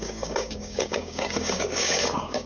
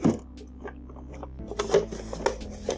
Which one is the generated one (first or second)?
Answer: first